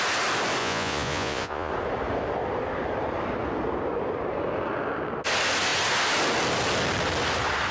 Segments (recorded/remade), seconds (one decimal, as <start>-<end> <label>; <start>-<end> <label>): 0.0-0.6 recorded; 0.6-1.7 remade; 1.7-7.7 recorded